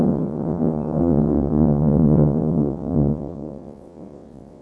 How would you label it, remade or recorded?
remade